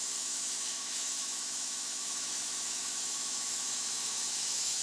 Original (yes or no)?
no